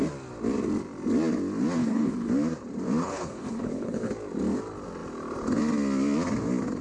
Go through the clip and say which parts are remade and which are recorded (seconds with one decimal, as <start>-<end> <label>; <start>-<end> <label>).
0.0-1.8 recorded; 1.8-2.3 remade; 2.3-3.0 recorded; 3.0-4.1 remade; 4.1-6.8 recorded